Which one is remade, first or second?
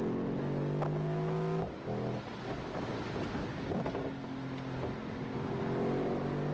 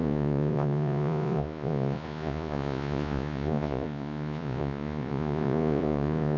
second